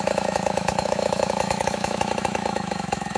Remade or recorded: remade